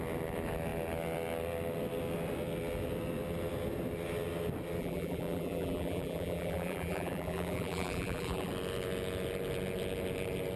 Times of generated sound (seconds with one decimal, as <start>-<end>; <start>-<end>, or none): 4.8-8.5